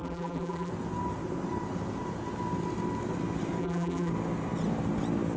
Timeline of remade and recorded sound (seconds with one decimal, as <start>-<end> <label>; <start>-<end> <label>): 0.0-0.7 remade; 0.7-3.6 recorded; 3.6-4.1 remade; 4.1-5.4 recorded